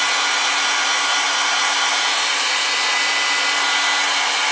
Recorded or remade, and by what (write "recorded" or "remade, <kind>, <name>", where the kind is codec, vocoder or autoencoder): recorded